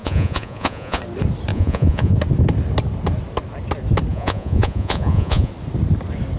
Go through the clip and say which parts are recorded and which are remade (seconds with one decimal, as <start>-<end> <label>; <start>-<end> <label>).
0.0-1.0 remade; 1.0-1.5 recorded; 1.5-2.2 remade; 2.2-4.1 recorded; 4.1-5.5 remade; 5.5-6.4 recorded

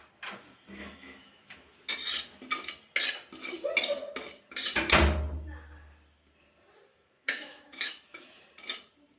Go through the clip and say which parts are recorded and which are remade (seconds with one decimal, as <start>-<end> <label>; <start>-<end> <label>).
0.0-0.8 recorded; 0.8-1.9 remade; 1.9-6.9 recorded; 6.9-8.4 remade; 8.4-9.2 recorded

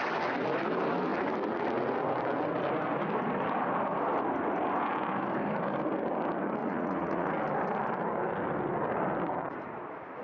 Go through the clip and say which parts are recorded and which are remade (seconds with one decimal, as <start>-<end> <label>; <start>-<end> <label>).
0.0-6.6 recorded; 6.6-7.3 remade; 7.3-10.2 recorded

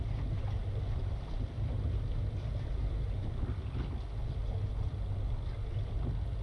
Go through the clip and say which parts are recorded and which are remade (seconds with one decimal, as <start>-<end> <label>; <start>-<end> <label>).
0.0-6.4 recorded

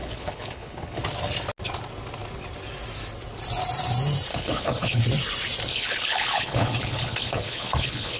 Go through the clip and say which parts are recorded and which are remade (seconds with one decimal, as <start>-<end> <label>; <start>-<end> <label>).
0.0-1.0 remade; 1.0-4.3 recorded; 4.3-5.0 remade; 5.0-5.7 recorded; 5.7-8.2 remade